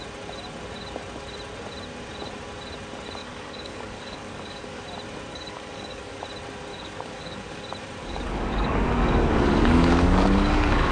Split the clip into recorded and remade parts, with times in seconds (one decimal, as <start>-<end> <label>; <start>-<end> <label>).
0.0-3.2 recorded; 3.2-4.8 remade; 4.8-5.3 recorded; 5.3-6.2 remade; 6.2-6.7 recorded; 6.7-7.6 remade; 7.6-8.0 recorded; 8.0-10.9 remade